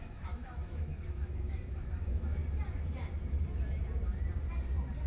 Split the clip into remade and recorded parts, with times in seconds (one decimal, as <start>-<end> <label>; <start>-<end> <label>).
0.0-2.4 remade; 2.4-5.1 recorded